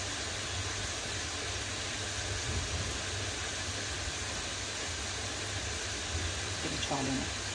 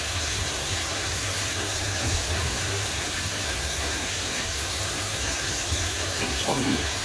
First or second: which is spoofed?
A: second